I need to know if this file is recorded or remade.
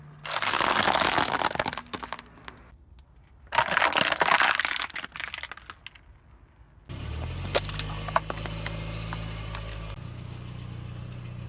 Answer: recorded